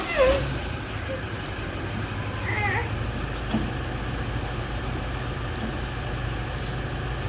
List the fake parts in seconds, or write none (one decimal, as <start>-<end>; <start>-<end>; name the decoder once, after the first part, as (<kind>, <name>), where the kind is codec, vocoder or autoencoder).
none